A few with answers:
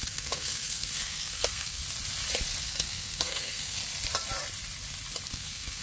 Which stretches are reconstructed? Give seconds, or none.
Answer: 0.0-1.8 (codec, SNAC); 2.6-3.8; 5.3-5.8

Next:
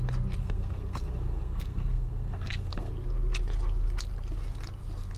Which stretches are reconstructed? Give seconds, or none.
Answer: 0.4-2.9 (codec, SNAC)

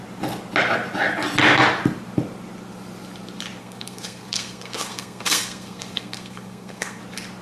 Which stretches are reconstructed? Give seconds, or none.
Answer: 3.6-7.0 (codec, SNAC)

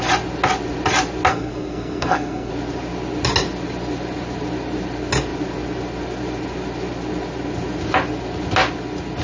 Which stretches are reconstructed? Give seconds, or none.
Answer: 1.3-2.5 (codec, SNAC)

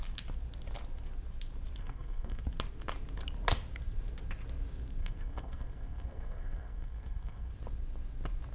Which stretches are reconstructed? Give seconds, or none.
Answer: 1.8-2.4 (codec, SNAC); 5.0-7.5